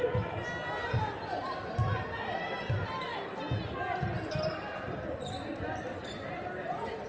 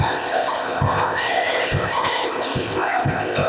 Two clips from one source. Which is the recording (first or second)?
first